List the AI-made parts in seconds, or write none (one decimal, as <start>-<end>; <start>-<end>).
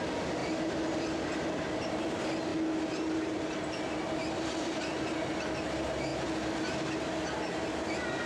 none